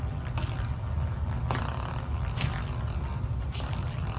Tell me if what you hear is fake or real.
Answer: real